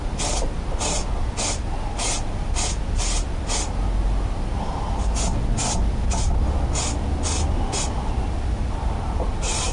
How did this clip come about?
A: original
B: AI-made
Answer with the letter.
A